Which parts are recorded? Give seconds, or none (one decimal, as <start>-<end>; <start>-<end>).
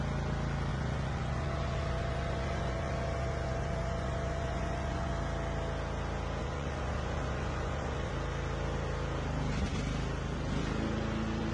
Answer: 0.0-0.7; 5.1-6.4; 8.1-11.5